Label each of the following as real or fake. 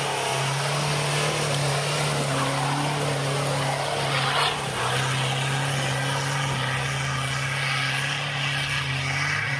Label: real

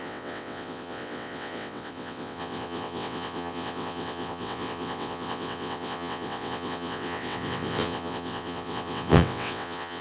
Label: fake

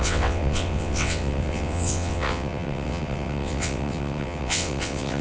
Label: fake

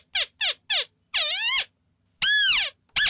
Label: real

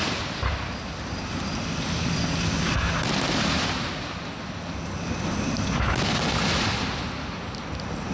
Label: real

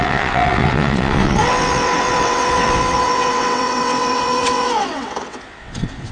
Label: fake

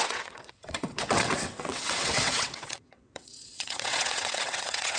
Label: fake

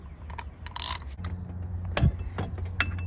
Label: real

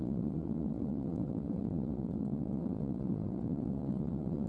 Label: fake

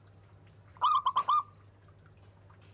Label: real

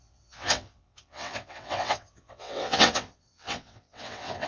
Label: fake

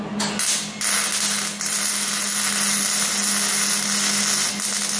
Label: real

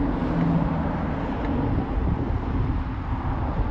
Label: real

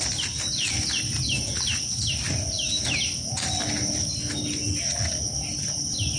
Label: real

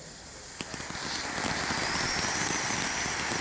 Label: real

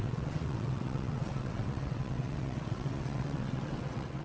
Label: fake